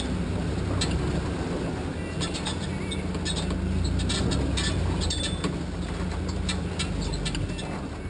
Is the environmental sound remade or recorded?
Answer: recorded